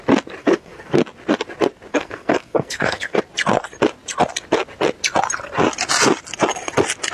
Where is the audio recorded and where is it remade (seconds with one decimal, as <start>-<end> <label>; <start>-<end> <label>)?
0.0-0.4 recorded; 0.4-1.0 remade; 1.0-1.9 recorded; 1.9-3.2 remade; 3.2-7.1 recorded